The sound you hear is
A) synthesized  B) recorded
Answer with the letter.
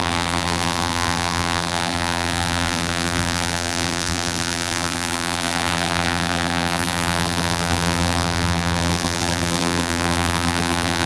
A